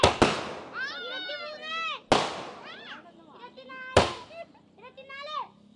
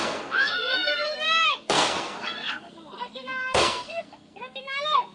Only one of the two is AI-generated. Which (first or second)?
second